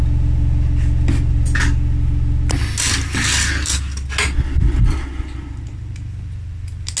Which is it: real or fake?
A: real